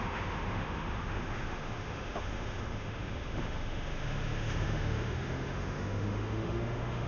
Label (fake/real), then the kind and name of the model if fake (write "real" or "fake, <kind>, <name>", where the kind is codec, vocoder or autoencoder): fake, autoencoder, DAC-VAE